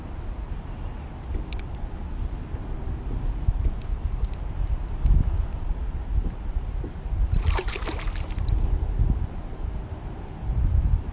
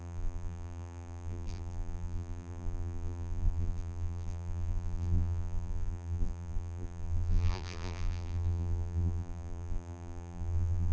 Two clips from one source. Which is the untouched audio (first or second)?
first